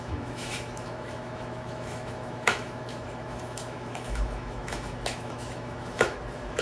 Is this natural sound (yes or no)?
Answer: no